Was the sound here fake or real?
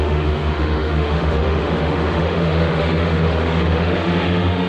fake